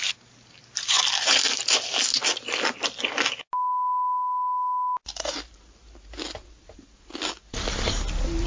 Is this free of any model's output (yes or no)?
yes